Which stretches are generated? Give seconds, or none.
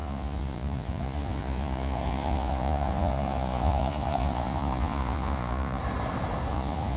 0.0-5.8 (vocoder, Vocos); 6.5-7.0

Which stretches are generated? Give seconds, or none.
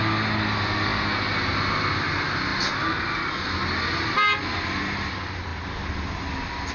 none